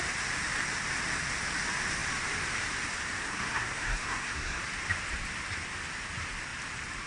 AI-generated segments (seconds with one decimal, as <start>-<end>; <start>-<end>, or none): 3.2-4.6